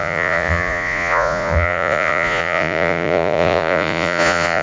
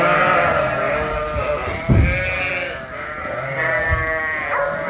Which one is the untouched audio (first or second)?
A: second